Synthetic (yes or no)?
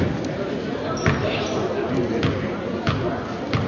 no